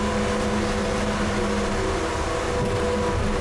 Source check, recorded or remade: recorded